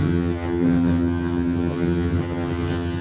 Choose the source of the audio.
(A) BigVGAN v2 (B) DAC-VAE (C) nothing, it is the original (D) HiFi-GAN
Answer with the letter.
D